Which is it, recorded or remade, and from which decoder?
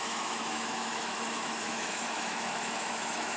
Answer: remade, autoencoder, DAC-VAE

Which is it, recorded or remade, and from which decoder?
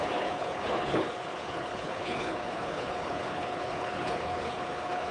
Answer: remade, codec, HILCodec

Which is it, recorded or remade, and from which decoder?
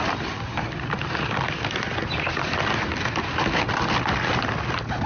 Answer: recorded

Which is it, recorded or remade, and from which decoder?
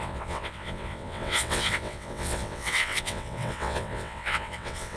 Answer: remade, vocoder, WaveNeXt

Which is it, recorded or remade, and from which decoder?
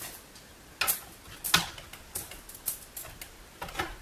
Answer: recorded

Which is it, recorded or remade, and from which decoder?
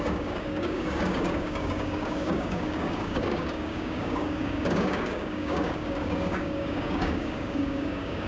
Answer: remade, codec, DAC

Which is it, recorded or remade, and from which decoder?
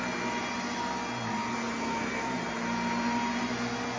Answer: recorded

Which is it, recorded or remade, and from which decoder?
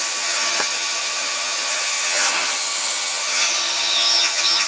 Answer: remade, vocoder, HiFi-GAN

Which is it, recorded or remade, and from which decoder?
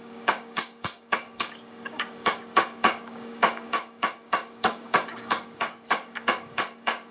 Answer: remade, codec, DAC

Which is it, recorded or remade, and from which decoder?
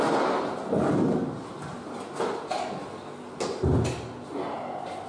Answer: recorded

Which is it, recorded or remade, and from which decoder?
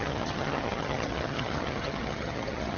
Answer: remade, vocoder, HiFi-GAN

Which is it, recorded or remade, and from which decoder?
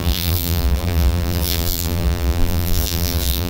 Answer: remade, vocoder, BigVGAN v2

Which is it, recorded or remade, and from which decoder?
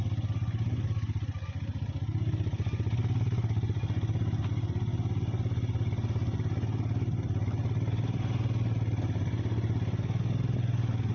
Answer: recorded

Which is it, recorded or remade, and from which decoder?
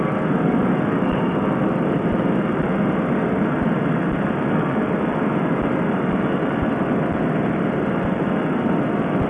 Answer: recorded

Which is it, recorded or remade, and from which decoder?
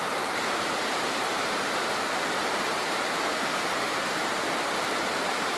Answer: remade, vocoder, BigVGAN v2